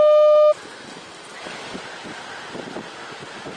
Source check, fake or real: real